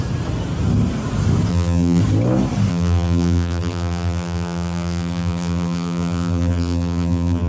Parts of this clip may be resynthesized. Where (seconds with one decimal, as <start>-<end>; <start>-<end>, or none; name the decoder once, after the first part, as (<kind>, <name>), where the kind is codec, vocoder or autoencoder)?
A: 1.5-2.0 (vocoder, BigVGAN v2); 2.7-7.5